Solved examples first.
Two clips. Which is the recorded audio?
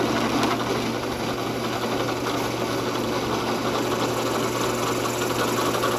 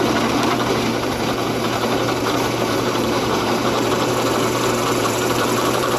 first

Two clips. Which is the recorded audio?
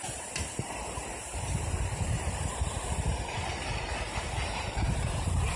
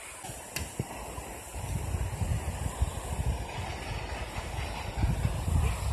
second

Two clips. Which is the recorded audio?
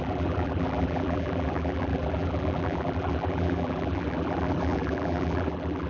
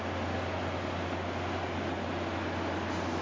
second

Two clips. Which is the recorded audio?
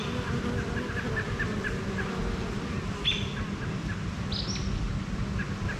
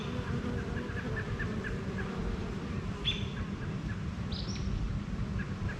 first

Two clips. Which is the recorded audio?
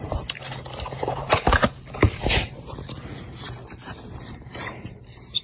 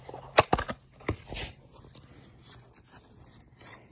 second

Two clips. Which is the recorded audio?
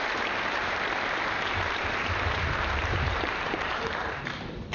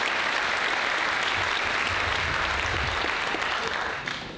second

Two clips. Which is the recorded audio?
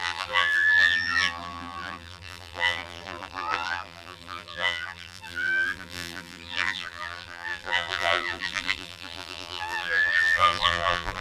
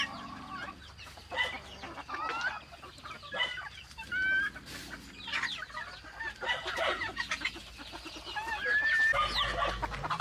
second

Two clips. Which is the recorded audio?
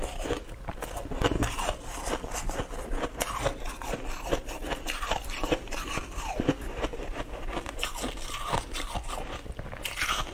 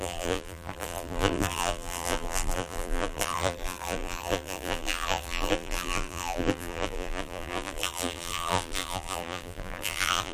first